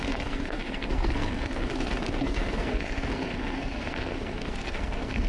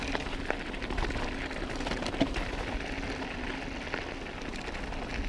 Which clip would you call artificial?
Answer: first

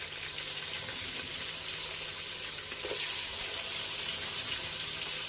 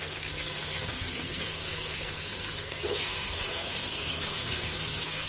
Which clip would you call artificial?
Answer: second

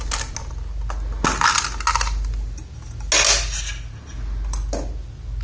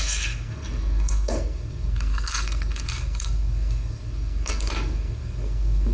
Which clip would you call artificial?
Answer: second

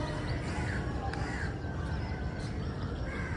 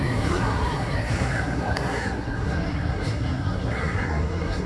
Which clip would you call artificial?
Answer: second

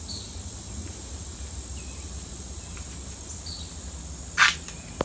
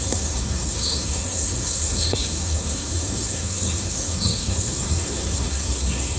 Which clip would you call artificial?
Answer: second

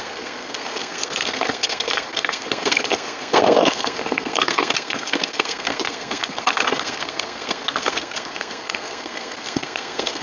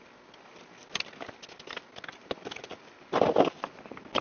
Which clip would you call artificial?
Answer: first